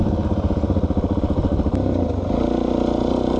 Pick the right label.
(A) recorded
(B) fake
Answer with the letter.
A